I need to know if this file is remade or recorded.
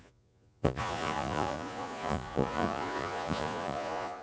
remade